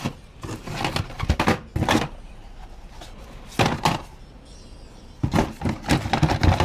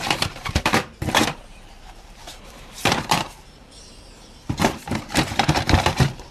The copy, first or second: second